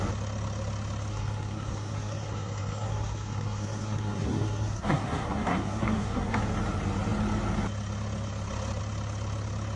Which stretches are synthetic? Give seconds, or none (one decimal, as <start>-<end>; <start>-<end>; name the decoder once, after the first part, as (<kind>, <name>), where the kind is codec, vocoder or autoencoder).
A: 1.1-6.4 (codec, SNAC)